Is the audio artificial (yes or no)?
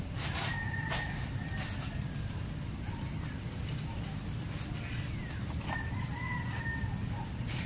no